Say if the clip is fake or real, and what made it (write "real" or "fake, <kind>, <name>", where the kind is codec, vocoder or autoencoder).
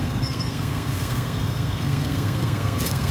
fake, codec, SNAC